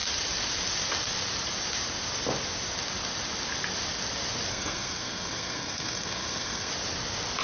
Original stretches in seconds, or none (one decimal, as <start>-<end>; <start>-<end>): 0.0-4.5; 6.7-7.4